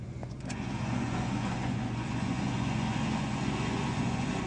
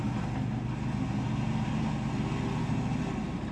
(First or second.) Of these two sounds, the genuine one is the second